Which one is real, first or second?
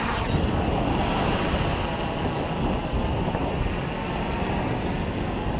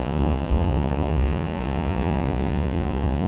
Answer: first